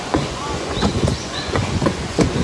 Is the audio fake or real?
fake